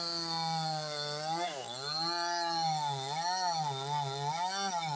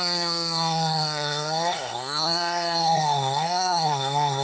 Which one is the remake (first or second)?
second